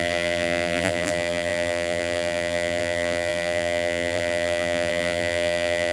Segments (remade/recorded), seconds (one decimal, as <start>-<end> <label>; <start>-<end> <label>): 0.0-5.9 remade